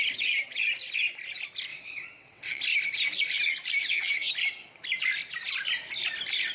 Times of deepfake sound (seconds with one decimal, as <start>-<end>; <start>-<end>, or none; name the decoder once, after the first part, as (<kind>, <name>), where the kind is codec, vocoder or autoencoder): 1.7-2.6 (vocoder, WaveNeXt); 3.8-4.3